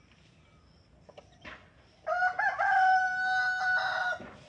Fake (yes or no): no